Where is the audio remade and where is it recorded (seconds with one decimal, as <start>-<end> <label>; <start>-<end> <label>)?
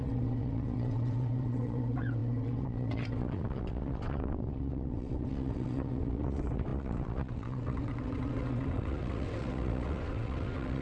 0.0-10.8 remade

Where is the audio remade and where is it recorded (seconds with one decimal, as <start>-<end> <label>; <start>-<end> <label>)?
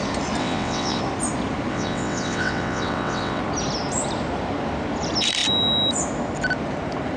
0.0-0.4 recorded; 0.4-1.0 remade; 1.0-1.7 recorded; 1.7-3.4 remade; 3.4-7.2 recorded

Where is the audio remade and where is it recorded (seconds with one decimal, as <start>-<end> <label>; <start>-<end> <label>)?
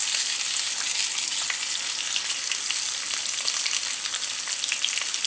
0.0-5.3 recorded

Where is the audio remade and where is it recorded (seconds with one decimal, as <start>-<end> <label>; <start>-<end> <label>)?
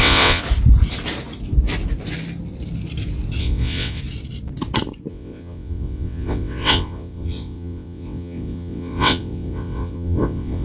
0.0-0.4 remade; 0.4-3.4 recorded; 3.4-4.0 remade; 4.0-5.1 recorded; 5.1-10.6 remade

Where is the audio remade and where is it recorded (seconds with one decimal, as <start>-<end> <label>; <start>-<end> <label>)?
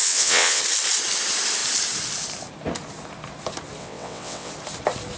0.0-0.6 remade; 0.6-3.8 recorded; 3.8-4.5 remade; 4.5-5.2 recorded